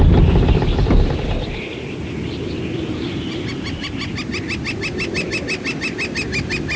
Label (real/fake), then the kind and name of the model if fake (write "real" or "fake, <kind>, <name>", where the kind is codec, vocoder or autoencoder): real